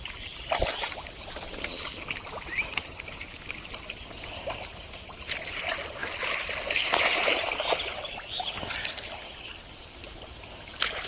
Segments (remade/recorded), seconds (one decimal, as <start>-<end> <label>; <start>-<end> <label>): 0.0-11.1 recorded